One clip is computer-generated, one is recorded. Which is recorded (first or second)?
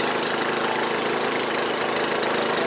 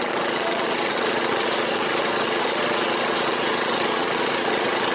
first